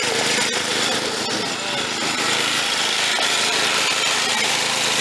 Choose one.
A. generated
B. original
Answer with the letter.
B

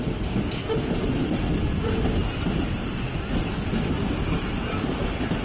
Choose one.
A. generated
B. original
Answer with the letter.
B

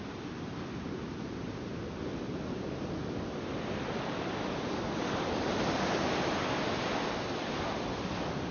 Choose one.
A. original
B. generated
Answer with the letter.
A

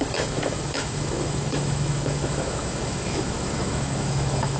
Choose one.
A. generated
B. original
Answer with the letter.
A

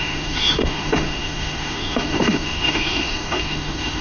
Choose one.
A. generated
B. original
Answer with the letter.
A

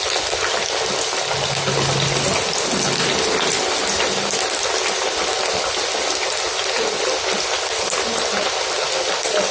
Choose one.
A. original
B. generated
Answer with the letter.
A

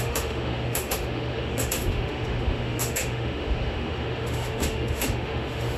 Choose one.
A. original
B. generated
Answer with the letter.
B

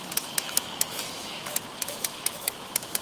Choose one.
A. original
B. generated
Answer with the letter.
B